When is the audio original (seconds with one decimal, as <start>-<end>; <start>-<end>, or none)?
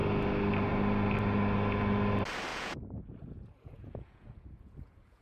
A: 0.0-2.5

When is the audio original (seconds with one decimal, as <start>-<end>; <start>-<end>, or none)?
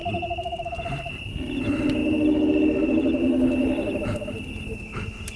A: 0.0-5.4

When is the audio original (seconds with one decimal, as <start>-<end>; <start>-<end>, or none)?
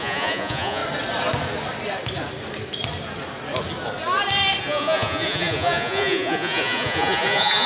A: 0.8-4.6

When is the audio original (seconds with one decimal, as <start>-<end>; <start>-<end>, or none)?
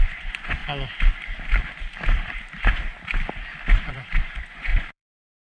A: 0.6-3.9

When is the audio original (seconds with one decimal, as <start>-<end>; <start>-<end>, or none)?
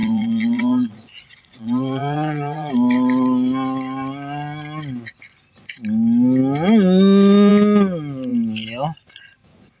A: 2.7-9.8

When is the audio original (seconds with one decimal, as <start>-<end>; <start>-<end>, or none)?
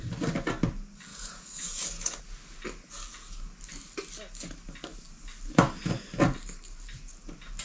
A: 0.0-1.1; 2.2-7.6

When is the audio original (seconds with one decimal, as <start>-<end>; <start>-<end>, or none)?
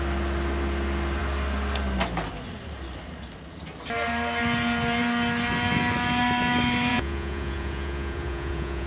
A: 0.0-6.9